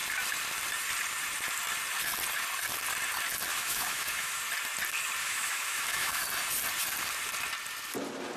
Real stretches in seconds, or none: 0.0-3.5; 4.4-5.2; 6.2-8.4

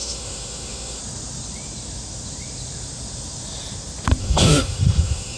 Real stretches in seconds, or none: 1.0-4.2

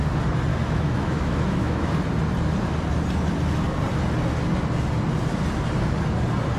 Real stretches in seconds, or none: 0.0-0.5; 1.9-6.6

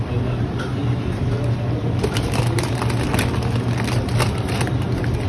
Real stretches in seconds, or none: 0.0-5.3

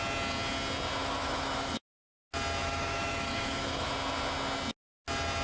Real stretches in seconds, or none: 0.0-1.0; 1.8-2.6; 3.9-5.4

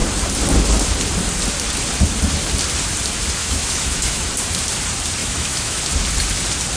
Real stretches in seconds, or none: 0.0-3.4; 4.3-5.2; 5.8-6.8

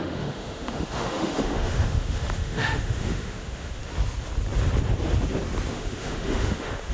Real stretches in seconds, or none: 3.8-5.7

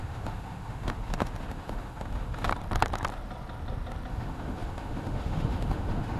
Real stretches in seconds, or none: 2.5-4.1